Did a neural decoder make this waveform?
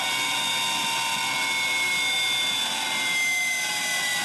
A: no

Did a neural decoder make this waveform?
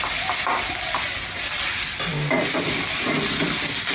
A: no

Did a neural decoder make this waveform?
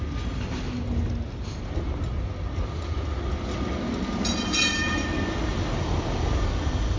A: no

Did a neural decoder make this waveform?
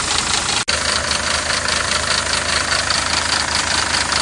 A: no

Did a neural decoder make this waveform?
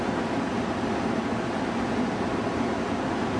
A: no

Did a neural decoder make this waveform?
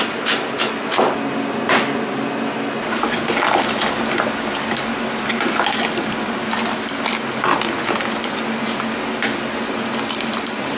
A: no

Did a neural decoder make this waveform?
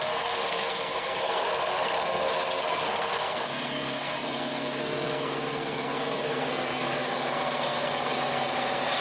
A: yes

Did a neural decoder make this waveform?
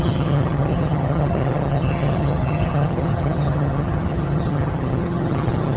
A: yes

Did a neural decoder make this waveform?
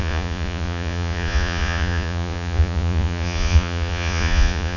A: yes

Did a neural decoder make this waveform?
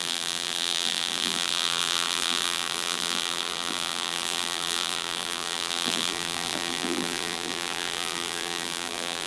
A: yes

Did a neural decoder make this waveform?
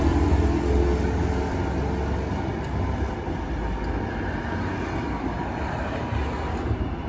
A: no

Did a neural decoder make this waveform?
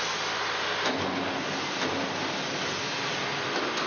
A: no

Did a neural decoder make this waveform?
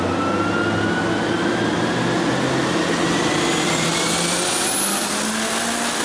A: no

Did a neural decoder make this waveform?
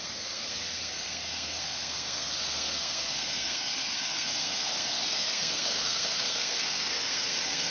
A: yes